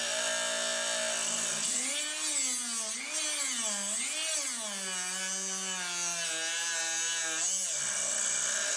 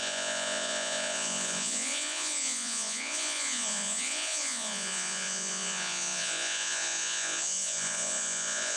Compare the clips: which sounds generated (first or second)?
second